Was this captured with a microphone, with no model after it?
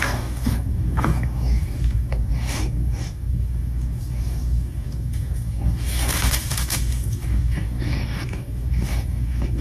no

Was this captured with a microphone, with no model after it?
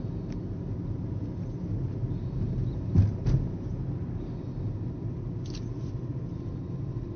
yes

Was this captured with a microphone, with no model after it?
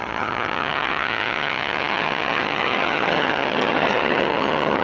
no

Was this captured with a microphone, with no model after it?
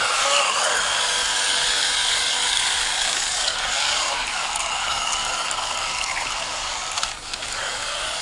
no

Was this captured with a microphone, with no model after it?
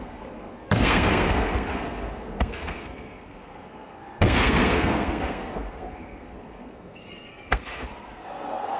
no